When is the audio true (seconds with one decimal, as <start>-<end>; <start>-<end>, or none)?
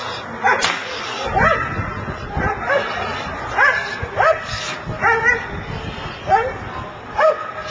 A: 0.0-7.7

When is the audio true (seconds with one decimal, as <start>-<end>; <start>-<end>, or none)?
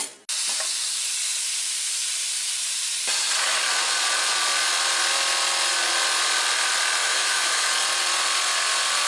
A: 0.0-7.0; 7.7-9.1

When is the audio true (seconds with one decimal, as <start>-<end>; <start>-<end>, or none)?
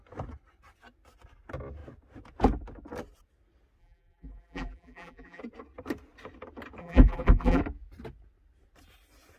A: 0.0-3.8; 5.4-6.8; 7.6-9.4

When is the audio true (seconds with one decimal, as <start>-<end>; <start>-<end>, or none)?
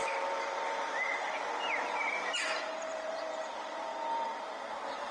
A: none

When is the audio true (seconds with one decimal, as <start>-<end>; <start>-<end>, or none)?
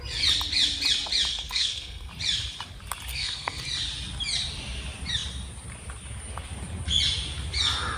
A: 0.0-1.3; 2.1-3.1; 3.6-8.0